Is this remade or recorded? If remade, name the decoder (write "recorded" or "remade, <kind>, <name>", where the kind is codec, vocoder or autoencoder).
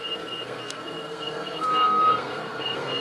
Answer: remade, codec, SNAC